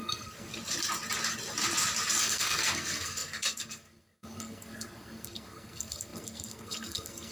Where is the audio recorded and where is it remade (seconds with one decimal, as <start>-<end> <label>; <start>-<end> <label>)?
0.0-0.5 remade; 0.5-2.2 recorded; 2.2-7.3 remade